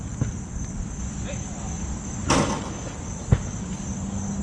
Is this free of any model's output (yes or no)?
yes